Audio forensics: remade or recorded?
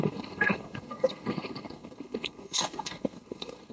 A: remade